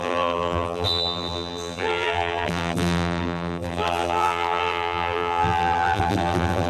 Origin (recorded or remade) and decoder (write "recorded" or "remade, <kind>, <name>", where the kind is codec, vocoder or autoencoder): remade, vocoder, BigVGAN v2